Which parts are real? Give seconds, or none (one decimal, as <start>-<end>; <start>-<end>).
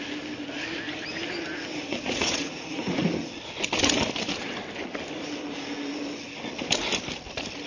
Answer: 0.0-1.7; 2.9-7.7